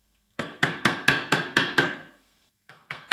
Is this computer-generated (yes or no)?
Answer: yes